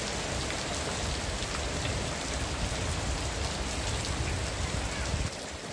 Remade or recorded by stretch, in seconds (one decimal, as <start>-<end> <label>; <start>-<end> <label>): 0.0-5.7 recorded